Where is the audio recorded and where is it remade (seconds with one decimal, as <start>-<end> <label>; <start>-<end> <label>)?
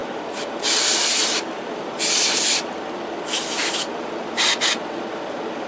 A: 0.0-5.7 remade